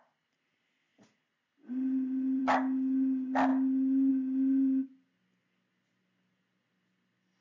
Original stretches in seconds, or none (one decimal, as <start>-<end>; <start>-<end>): 0.0-7.4